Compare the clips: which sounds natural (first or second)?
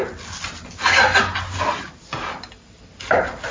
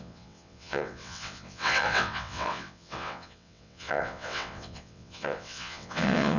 first